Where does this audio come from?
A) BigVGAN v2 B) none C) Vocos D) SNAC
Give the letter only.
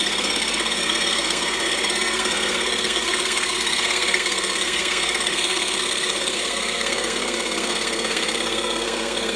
D